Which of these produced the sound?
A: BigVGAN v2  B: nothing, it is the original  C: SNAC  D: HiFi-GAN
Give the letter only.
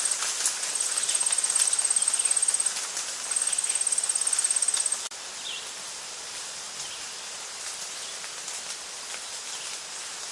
B